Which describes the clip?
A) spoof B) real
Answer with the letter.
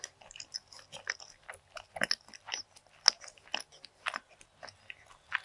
B